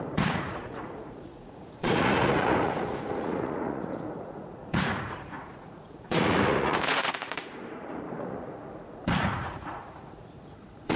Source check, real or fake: fake